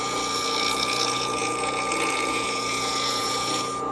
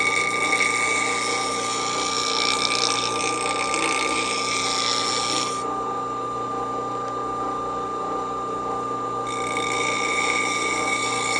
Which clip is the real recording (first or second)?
second